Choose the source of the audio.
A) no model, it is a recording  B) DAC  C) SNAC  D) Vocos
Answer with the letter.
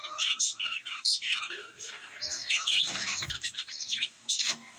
B